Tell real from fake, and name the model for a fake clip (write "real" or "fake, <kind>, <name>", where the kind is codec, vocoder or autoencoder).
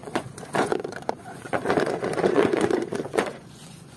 fake, vocoder, Vocos